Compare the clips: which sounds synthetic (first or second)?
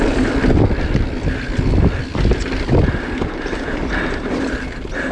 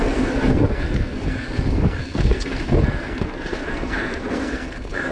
second